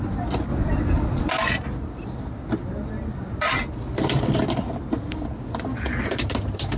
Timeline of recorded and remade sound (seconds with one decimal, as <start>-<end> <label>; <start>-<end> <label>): 0.0-0.5 recorded; 0.5-1.3 remade; 1.3-6.8 recorded